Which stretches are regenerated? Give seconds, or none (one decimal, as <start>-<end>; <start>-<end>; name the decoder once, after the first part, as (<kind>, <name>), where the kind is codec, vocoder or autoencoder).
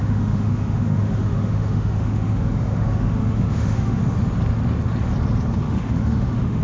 0.0-4.0 (autoencoder, DAC-VAE); 5.6-6.6